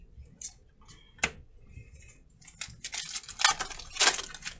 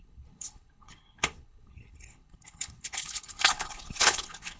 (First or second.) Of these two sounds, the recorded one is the first